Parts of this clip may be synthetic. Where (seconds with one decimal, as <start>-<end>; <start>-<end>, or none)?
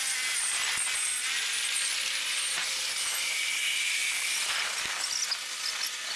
0.0-0.6; 4.0-4.5